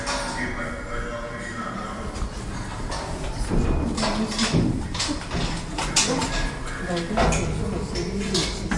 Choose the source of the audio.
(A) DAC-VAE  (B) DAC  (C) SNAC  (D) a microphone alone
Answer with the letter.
D